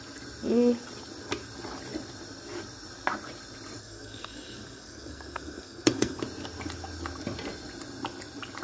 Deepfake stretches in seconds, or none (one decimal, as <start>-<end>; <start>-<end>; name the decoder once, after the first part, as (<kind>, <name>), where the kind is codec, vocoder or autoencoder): 3.8-6.2 (codec, SNAC)